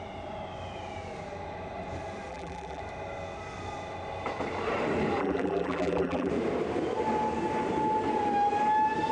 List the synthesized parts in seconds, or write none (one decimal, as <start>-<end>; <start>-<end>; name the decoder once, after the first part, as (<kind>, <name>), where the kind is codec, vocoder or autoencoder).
2.3-2.8 (vocoder, BigVGAN v2); 5.2-6.3